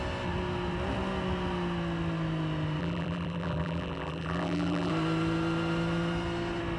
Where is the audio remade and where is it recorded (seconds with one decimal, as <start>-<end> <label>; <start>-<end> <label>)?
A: 0.0-2.8 recorded; 2.8-4.9 remade; 4.9-6.8 recorded